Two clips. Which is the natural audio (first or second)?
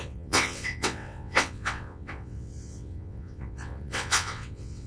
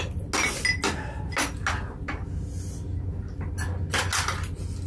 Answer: second